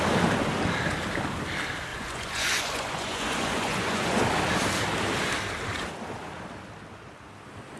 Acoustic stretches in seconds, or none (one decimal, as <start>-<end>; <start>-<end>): 0.0-1.9; 4.2-7.8